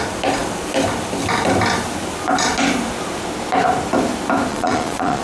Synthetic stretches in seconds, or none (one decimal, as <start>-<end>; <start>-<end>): 4.5-5.2